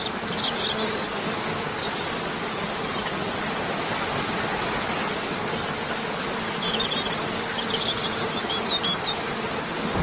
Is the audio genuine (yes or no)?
yes